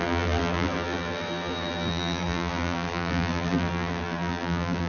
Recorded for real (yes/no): no